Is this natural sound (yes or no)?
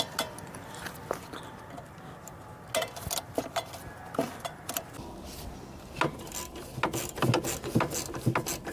yes